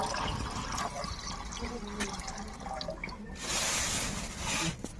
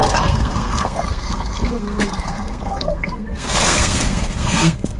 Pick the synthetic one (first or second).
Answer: second